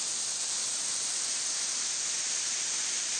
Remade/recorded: remade